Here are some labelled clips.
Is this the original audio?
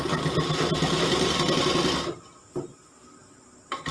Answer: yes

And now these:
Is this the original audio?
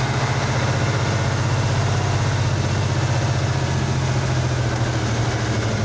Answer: yes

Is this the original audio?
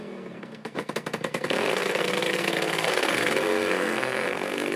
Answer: no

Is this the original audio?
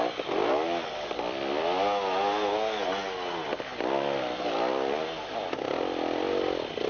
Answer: yes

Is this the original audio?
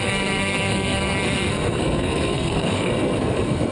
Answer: no